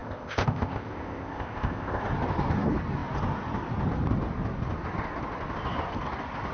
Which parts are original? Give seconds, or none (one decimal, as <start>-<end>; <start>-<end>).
2.0-6.5